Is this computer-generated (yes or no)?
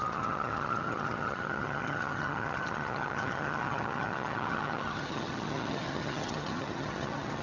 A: yes